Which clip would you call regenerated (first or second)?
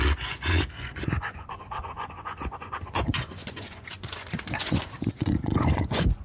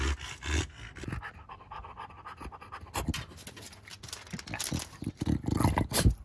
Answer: first